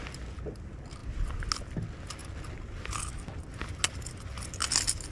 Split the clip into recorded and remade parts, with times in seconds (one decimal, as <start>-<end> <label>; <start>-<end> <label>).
0.0-5.1 recorded